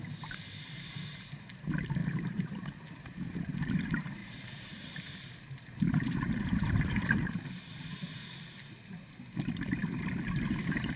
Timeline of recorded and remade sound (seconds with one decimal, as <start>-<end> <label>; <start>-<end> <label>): 0.0-2.0 recorded; 2.0-3.7 remade; 3.7-4.2 recorded; 4.2-7.3 remade; 7.3-11.0 recorded